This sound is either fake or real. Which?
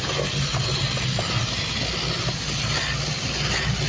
real